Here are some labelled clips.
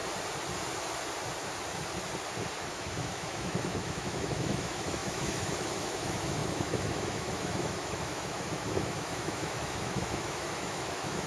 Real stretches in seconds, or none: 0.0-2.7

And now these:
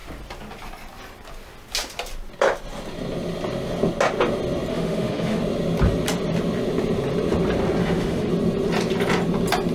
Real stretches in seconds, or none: 0.0-4.7; 5.4-7.8; 8.3-9.7

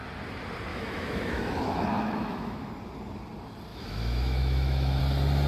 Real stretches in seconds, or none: 0.0-0.7; 2.7-3.7; 5.0-5.5

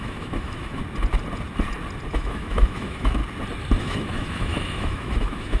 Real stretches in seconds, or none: 0.8-2.1; 3.2-3.8

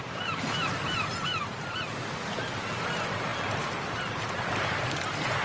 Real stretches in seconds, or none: 0.0-5.4

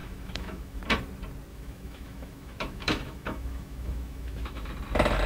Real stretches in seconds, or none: 0.8-1.5; 4.7-5.3

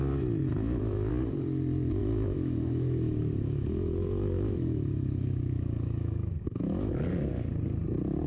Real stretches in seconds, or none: 0.0-0.4; 1.1-2.0; 7.0-8.3